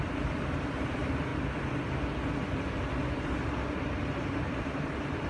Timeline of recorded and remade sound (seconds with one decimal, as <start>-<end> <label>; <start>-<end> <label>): 0.0-1.3 remade; 1.3-4.5 recorded; 4.5-5.3 remade